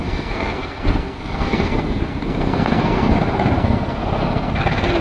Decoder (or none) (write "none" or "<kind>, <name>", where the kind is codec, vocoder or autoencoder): codec, SNAC